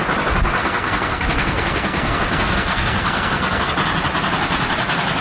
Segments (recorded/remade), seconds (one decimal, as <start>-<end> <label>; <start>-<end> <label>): 0.0-0.6 recorded; 0.6-3.7 remade; 3.7-5.2 recorded